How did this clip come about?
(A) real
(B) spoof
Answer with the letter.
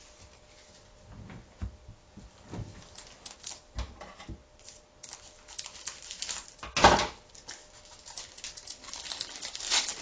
A